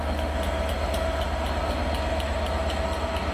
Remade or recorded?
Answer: recorded